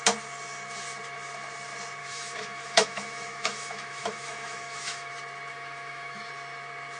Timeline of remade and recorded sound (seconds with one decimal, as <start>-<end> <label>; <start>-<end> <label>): 0.0-2.0 recorded; 2.0-5.1 remade; 5.1-5.5 recorded; 5.5-6.3 remade; 6.3-7.0 recorded